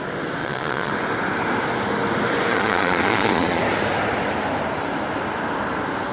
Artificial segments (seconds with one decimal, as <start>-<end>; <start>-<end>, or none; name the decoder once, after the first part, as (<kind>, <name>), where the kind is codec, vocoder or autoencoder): 0.4-0.9 (vocoder, Vocos); 2.5-3.6